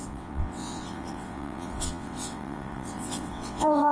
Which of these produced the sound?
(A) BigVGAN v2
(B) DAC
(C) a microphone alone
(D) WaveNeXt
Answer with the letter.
D